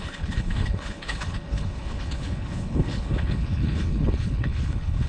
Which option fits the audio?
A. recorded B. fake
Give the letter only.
B